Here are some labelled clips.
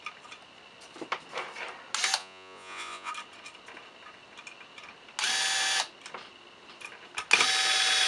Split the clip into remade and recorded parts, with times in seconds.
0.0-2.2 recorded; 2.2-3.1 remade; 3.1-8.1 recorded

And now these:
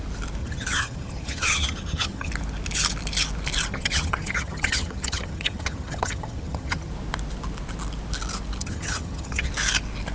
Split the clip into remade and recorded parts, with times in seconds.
0.0-0.4 recorded; 0.4-2.3 remade; 2.3-3.7 recorded; 3.7-6.9 remade; 6.9-8.6 recorded; 8.6-9.5 remade; 9.5-10.1 recorded

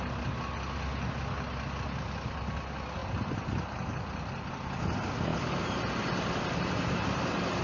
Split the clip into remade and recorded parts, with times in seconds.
0.0-7.6 recorded

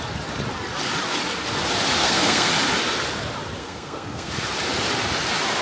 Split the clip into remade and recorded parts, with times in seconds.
0.0-2.0 recorded; 2.0-2.5 remade; 2.5-3.6 recorded; 3.6-4.3 remade; 4.3-5.6 recorded

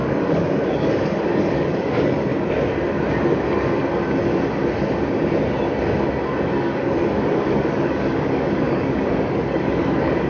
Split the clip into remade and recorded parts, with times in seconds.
0.0-2.3 remade; 2.3-6.4 recorded; 6.4-10.3 remade